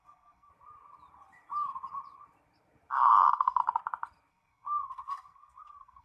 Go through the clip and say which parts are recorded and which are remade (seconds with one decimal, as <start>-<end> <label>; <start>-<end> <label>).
0.0-0.5 remade; 0.5-2.9 recorded; 2.9-3.6 remade; 3.6-4.3 recorded; 4.3-6.0 remade